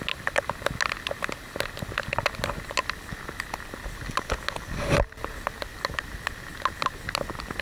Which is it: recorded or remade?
recorded